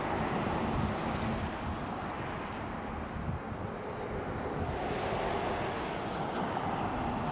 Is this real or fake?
real